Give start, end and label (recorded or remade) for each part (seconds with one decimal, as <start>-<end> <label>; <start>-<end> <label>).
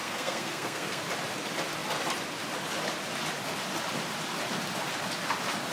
0.0-1.0 remade; 1.0-5.7 recorded